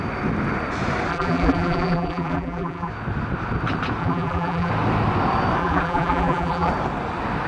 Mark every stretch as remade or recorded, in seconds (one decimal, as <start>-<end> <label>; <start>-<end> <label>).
0.0-1.1 recorded; 1.1-2.9 remade; 2.9-4.0 recorded; 4.0-4.7 remade; 4.7-5.6 recorded; 5.6-6.7 remade; 6.7-7.5 recorded